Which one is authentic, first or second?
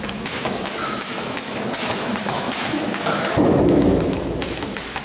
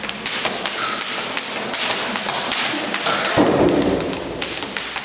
second